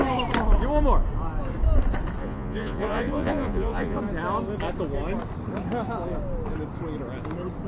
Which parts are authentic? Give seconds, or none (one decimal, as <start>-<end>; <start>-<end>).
0.0-2.2; 4.0-7.7